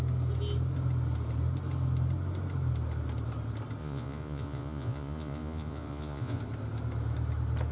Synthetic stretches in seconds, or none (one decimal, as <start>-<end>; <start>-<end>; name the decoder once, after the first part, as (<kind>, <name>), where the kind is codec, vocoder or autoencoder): 3.8-6.4 (vocoder, Vocos)